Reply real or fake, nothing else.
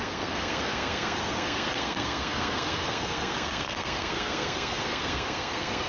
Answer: fake